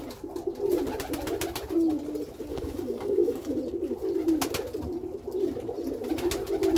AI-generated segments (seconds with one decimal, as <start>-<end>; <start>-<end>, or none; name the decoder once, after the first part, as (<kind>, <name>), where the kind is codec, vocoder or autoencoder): 2.5-3.5 (codec, DAC)